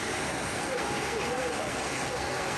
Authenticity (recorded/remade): remade